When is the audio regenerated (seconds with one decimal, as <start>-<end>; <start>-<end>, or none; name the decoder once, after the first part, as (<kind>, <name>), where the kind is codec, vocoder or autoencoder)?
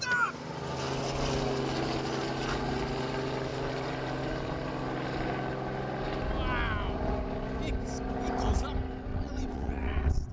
9.1-10.3 (vocoder, WaveNeXt)